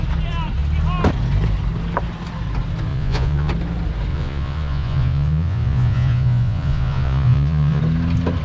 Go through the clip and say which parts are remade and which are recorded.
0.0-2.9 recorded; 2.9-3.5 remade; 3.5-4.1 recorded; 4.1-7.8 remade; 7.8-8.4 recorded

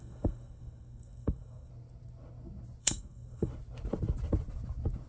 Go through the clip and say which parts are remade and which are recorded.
0.0-1.7 remade; 1.7-2.8 recorded; 2.8-3.5 remade; 3.5-5.1 recorded

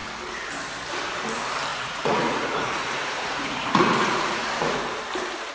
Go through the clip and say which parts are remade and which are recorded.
0.0-1.7 recorded; 1.7-4.8 remade; 4.8-5.5 recorded